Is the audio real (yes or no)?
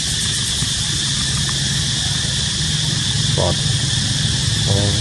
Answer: yes